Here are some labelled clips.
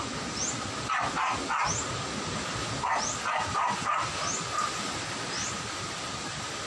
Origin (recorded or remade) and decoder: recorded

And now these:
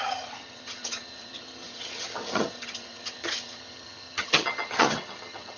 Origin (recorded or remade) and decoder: remade, vocoder, HiFi-GAN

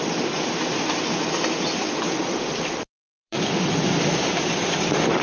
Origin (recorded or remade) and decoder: remade, vocoder, BigVGAN v2